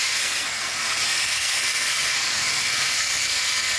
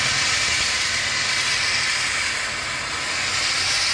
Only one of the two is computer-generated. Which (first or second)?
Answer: first